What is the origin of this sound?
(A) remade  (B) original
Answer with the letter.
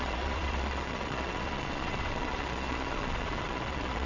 A